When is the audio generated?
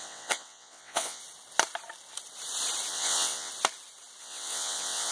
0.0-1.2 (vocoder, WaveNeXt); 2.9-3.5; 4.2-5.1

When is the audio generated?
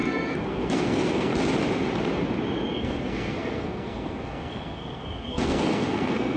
0.0-1.3 (codec, SNAC); 2.7-6.4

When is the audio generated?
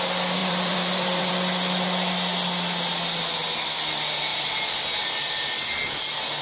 0.4-1.3 (vocoder, BigVGAN v2)